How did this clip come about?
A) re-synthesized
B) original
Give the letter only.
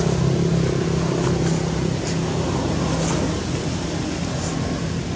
B